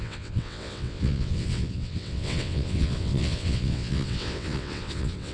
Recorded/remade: remade